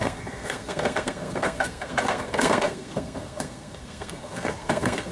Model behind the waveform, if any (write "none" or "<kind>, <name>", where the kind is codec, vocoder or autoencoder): codec, SNAC